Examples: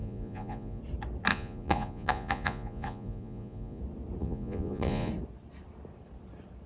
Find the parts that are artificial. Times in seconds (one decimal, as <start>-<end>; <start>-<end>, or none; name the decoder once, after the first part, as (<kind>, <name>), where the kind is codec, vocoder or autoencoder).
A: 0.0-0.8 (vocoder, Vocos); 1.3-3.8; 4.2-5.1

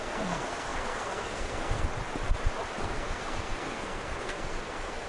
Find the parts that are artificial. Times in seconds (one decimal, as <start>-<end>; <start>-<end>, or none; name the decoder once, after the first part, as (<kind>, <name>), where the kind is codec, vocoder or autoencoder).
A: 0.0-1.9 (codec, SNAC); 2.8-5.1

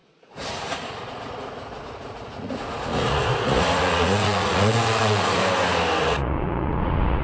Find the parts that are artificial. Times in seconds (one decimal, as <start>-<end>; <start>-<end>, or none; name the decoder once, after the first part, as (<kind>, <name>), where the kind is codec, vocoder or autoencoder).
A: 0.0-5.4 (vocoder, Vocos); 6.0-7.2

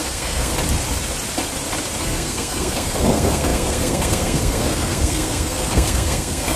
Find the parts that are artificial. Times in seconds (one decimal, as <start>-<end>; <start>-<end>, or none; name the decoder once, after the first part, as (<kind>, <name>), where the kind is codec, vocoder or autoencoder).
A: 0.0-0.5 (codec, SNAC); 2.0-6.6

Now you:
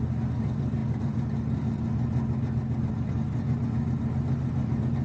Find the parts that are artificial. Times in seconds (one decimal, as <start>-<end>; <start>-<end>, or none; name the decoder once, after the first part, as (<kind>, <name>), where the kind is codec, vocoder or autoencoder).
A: none